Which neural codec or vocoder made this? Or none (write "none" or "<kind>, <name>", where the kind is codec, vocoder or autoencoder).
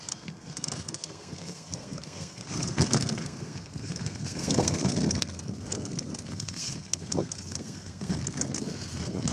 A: codec, SNAC